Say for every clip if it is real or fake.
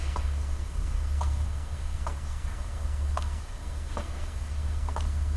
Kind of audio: fake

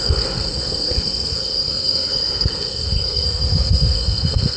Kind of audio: fake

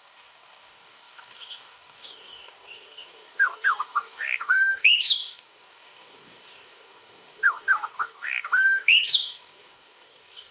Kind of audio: fake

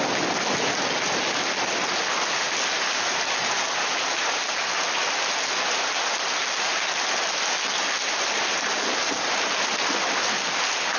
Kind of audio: real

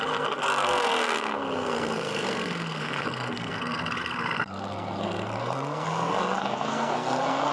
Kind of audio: fake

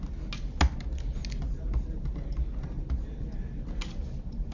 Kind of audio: real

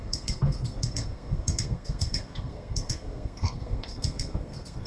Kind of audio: fake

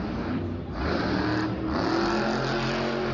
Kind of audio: real